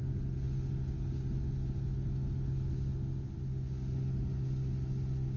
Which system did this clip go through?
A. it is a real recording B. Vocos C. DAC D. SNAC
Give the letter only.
A